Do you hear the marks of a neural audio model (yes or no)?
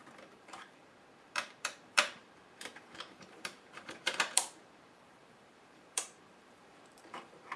yes